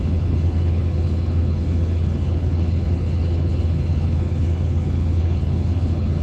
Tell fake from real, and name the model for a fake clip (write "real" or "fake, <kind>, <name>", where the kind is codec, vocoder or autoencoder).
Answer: fake, codec, HILCodec